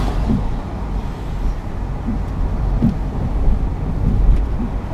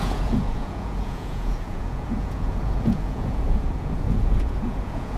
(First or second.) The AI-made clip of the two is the second